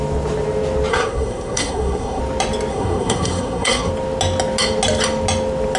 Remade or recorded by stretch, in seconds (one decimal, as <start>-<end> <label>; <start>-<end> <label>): 0.0-0.9 recorded; 0.9-2.2 remade; 2.2-2.7 recorded; 2.7-3.9 remade; 3.9-5.8 recorded